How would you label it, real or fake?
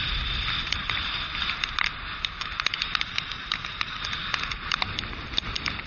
real